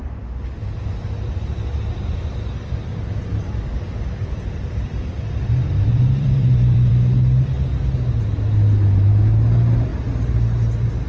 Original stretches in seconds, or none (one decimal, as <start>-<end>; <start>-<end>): 0.0-3.3; 6.9-11.1